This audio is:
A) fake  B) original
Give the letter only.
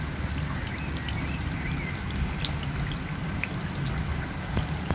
B